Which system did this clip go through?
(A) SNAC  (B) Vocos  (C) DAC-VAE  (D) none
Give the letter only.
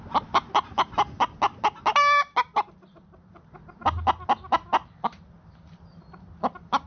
D